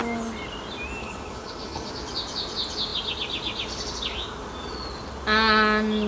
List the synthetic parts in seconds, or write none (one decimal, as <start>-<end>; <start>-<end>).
1.0-1.9